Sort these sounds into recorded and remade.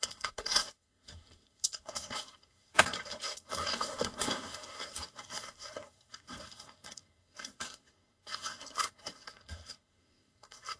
remade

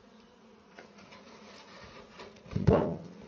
remade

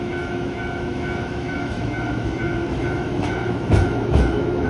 remade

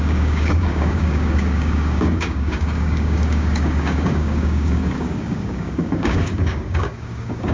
remade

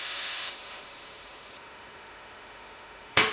remade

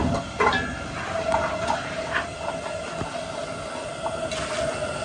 recorded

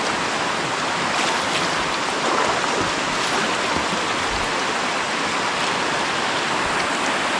recorded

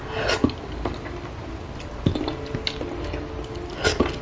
recorded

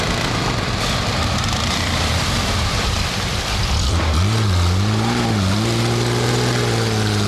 remade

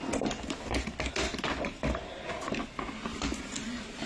recorded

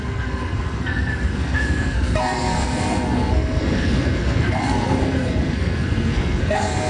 remade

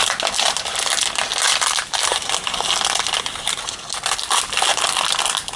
recorded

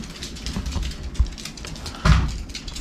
recorded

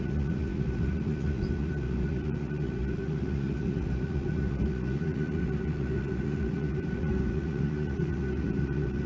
remade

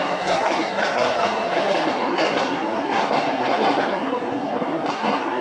remade